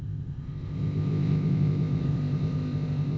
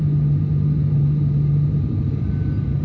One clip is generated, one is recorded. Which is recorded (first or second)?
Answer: second